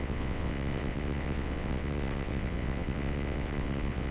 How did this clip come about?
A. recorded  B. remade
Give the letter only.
B